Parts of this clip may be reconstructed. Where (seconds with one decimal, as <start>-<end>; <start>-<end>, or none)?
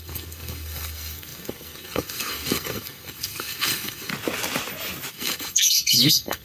0.0-4.1; 5.1-6.4